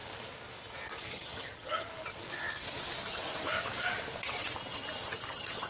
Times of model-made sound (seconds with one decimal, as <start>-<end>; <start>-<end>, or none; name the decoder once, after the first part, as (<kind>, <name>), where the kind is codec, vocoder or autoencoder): 1.0-1.9 (vocoder, HiFi-GAN); 5.3-5.7